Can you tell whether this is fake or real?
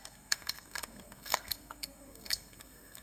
fake